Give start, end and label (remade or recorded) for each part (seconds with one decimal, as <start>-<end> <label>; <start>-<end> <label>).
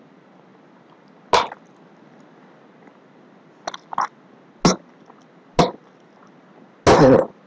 0.0-7.5 recorded